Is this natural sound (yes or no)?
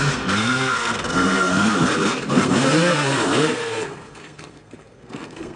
no